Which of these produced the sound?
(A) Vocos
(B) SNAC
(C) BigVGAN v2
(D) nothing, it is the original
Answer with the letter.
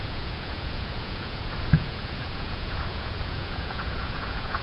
A